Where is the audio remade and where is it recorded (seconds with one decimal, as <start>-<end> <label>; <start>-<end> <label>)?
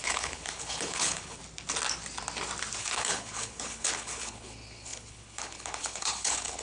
0.0-1.4 remade; 1.4-2.8 recorded; 2.8-6.6 remade